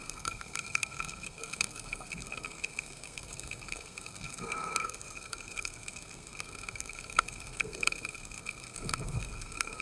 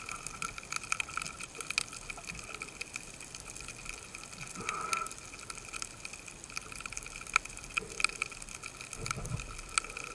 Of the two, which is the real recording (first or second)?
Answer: second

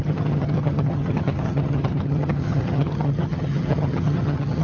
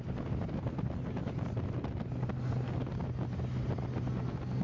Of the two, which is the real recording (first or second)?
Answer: second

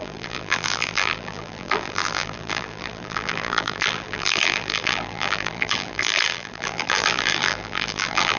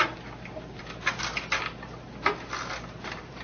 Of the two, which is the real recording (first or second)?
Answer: second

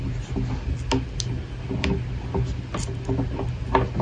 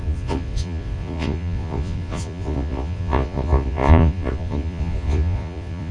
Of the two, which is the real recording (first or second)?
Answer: first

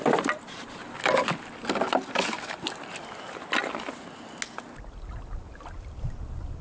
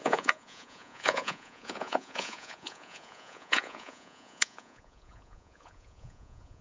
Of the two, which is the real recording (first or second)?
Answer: first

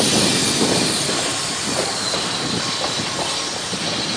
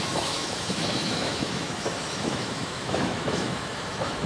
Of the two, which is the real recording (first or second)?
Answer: first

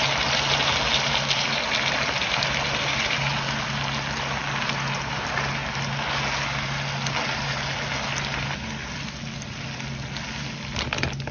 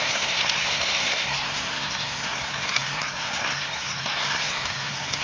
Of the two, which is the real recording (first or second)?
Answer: first